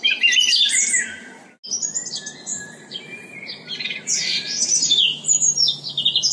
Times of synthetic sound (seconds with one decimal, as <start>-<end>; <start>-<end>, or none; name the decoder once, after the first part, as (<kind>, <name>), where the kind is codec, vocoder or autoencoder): 2.5-5.3 (vocoder, BigVGAN v2)

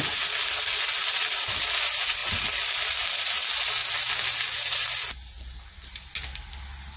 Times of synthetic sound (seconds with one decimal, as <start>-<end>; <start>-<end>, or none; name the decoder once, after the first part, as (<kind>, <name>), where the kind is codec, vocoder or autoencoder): none

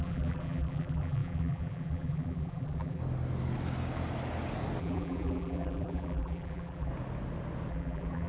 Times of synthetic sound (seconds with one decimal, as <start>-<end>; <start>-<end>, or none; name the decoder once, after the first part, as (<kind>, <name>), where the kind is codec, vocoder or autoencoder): 0.0-3.0 (vocoder, BigVGAN v2); 4.8-6.9; 7.7-8.3

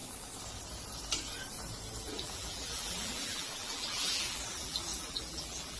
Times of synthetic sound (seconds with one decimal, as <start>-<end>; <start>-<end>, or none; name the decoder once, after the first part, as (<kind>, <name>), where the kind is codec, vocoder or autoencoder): 2.0-5.8 (vocoder, BigVGAN v2)

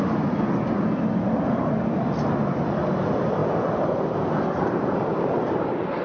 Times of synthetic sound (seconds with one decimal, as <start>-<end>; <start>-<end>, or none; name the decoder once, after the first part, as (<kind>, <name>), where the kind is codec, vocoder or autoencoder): 3.4-6.0 (vocoder, BigVGAN v2)

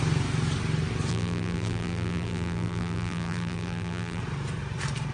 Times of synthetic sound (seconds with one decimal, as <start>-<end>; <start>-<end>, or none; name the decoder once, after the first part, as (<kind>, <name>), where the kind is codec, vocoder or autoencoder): 1.1-4.2 (vocoder, BigVGAN v2)